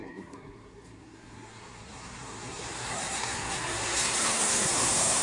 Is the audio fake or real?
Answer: fake